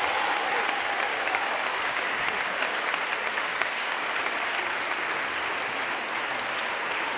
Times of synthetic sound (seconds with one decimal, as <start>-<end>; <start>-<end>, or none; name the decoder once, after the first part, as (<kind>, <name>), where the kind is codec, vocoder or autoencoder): 1.1-2.2 (codec, DAC); 3.5-4.1